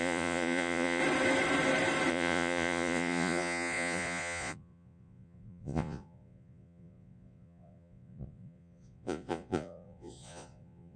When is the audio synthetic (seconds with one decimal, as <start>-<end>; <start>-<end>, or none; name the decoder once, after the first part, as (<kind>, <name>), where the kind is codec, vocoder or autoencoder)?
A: 0.0-1.0 (vocoder, Vocos); 2.1-11.0